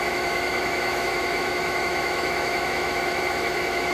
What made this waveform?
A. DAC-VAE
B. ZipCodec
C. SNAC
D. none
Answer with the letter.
A